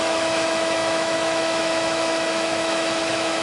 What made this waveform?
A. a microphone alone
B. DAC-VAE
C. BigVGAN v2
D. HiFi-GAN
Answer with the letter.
B